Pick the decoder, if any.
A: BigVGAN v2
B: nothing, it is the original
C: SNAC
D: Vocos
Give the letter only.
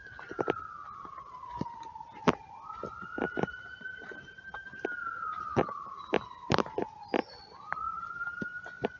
B